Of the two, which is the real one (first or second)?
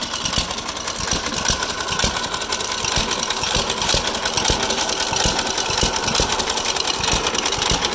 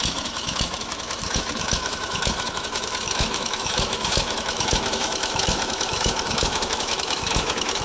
first